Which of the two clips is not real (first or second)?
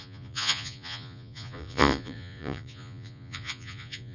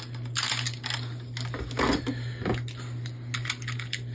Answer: first